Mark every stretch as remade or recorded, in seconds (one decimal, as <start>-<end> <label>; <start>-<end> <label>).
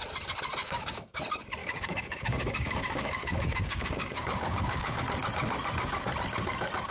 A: 0.0-0.6 recorded; 0.6-1.2 remade; 1.2-1.6 recorded; 1.6-5.0 remade; 5.0-6.9 recorded